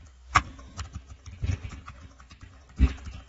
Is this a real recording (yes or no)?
yes